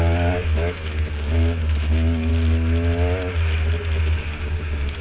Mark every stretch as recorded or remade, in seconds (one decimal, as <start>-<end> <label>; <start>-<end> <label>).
0.0-2.3 remade; 2.3-4.0 recorded; 4.0-5.0 remade